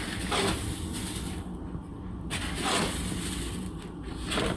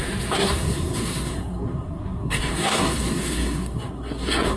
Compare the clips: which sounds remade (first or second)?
second